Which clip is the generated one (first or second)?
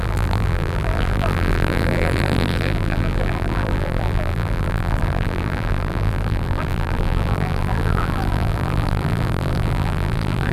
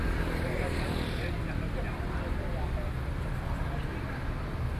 first